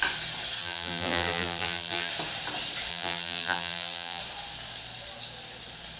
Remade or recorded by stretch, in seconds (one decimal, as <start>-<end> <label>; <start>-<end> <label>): 0.0-0.6 recorded; 0.6-2.1 remade; 2.1-2.9 recorded; 2.9-4.2 remade; 4.2-6.0 recorded